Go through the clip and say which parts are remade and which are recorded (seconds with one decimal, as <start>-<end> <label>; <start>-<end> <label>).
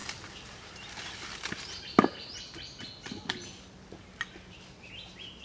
0.0-5.4 recorded